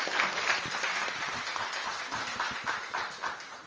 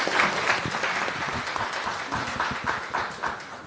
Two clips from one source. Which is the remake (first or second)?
first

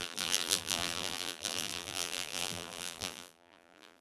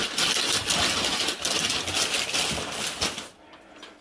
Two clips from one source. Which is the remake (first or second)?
first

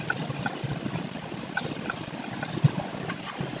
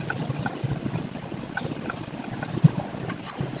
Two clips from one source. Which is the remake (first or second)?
first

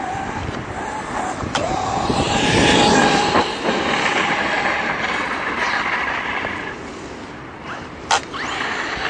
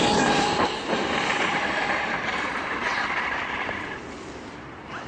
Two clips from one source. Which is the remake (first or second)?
second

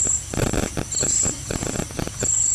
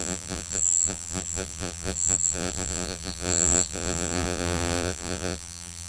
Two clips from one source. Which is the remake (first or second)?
second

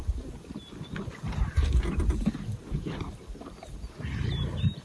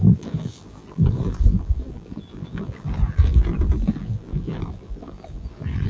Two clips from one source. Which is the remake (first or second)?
second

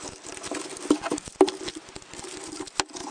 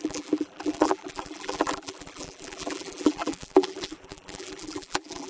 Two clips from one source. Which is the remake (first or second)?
second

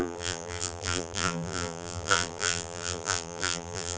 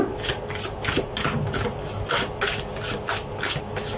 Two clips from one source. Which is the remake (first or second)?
first